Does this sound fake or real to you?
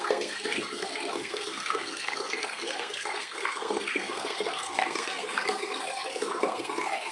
fake